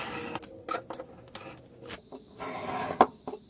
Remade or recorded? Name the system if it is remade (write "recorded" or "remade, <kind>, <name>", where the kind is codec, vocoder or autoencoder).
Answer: recorded